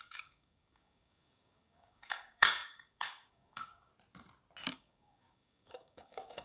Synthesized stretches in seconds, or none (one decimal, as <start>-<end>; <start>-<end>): 0.0-3.9; 4.7-6.4